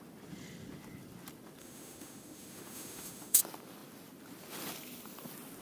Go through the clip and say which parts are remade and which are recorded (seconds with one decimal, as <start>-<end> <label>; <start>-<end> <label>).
0.0-1.6 recorded; 1.6-3.4 remade; 3.4-5.6 recorded